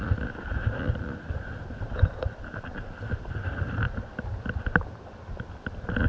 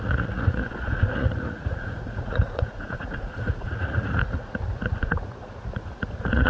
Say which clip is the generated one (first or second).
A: second